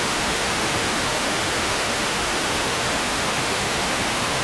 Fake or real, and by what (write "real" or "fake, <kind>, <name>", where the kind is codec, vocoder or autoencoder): fake, autoencoder, DAC-VAE